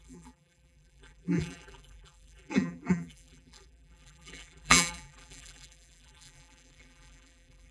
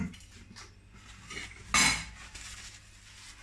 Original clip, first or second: second